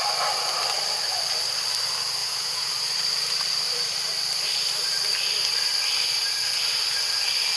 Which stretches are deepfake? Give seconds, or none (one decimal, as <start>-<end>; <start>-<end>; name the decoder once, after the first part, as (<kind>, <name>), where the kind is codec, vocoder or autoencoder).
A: 2.2-2.7 (vocoder, Vocos)